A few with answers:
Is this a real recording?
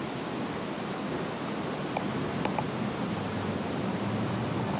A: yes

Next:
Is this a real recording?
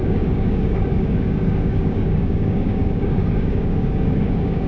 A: no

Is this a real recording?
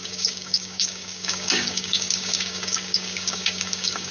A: no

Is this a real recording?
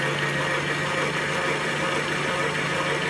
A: yes